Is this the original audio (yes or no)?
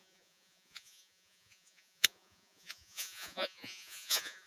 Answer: no